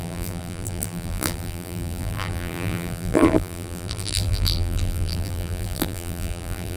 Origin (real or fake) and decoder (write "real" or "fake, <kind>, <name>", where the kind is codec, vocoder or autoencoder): fake, vocoder, BigVGAN v2